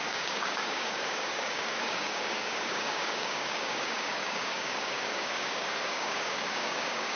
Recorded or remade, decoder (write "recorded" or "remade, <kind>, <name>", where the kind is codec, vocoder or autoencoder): remade, codec, DAC